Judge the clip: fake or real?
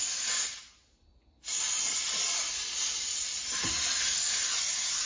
real